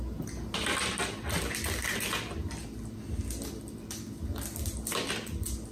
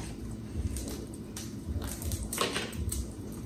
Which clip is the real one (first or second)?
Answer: first